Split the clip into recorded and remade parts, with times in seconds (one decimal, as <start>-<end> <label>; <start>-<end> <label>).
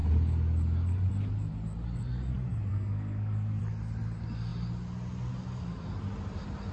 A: 0.0-2.7 recorded; 2.7-3.6 remade; 3.6-6.7 recorded